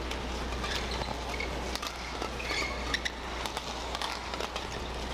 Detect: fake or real real